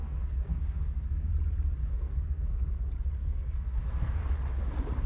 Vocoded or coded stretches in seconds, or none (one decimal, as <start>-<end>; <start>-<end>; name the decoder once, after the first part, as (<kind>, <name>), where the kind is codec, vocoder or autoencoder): 0.0-1.3 (codec, SNAC); 1.8-2.8; 3.2-4.2